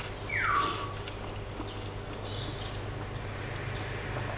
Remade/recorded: recorded